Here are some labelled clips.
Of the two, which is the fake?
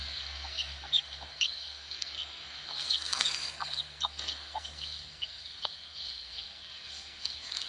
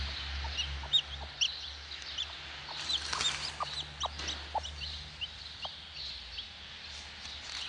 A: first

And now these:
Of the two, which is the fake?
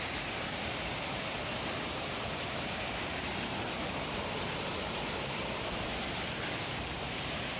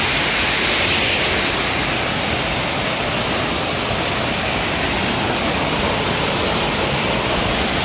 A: first